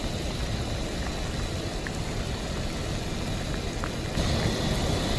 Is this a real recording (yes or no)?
yes